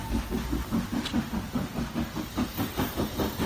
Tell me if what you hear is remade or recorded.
recorded